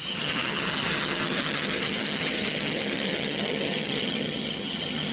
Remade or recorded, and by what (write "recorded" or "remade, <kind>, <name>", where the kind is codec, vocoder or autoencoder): remade, vocoder, HiFi-GAN